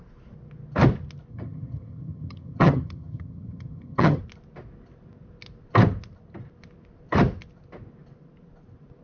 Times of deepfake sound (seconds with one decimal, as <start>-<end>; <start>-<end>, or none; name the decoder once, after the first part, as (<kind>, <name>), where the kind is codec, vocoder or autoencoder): 1.3-4.2 (vocoder, HiFi-GAN)